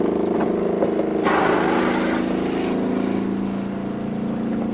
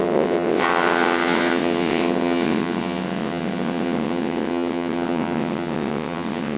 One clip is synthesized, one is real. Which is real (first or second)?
first